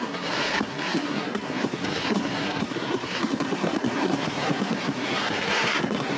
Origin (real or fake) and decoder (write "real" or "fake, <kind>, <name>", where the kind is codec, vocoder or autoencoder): fake, codec, SNAC